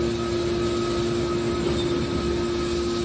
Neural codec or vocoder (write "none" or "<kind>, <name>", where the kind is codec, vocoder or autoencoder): none